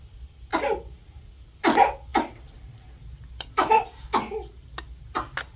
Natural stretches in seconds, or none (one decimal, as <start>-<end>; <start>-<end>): 0.0-5.6